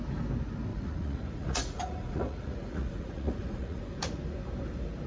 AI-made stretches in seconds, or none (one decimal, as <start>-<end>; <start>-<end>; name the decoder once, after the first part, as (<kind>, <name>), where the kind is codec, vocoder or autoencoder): 0.7-3.8 (vocoder, Vocos)